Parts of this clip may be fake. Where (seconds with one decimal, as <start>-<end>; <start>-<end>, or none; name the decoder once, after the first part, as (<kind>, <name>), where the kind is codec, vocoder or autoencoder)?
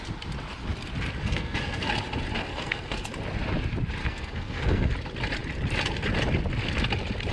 1.2-1.9 (codec, SNAC); 2.4-3.1; 4.0-4.9